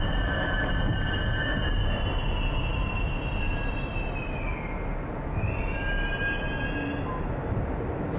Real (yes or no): yes